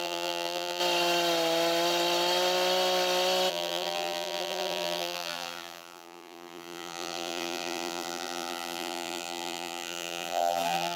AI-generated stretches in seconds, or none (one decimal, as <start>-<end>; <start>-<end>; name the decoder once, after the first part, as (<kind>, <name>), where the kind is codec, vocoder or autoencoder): 0.0-0.8 (vocoder, BigVGAN v2); 3.5-11.0